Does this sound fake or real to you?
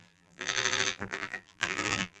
fake